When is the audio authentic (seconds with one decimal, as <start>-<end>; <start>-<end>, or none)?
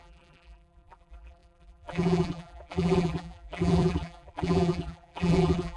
none